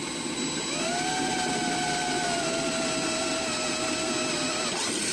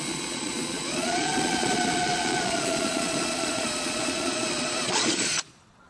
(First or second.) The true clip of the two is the first